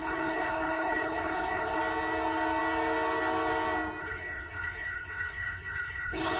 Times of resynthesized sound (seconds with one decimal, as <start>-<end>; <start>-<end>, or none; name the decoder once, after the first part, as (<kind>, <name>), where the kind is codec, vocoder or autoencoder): 0.0-1.8 (codec, HILCodec); 4.0-6.4